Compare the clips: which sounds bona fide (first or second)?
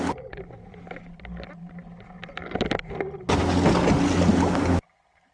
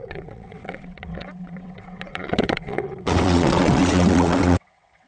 first